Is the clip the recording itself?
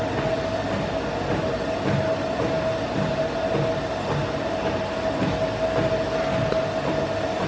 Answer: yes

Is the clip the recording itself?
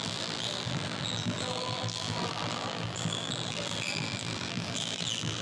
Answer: no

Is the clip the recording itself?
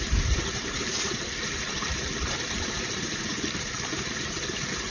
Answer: no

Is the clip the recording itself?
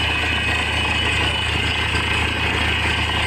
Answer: yes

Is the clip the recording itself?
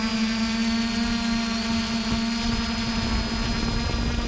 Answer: yes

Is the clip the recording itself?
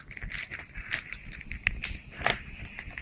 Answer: yes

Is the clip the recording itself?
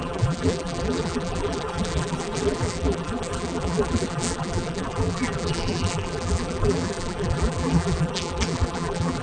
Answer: no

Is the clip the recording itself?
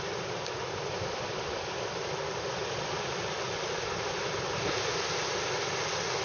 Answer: yes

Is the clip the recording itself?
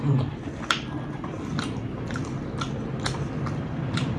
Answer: no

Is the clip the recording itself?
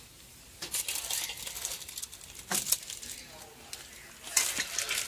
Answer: yes